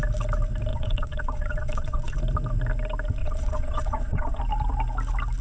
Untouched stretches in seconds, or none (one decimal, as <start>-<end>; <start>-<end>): 0.0-0.7; 2.2-3.2; 4.4-5.4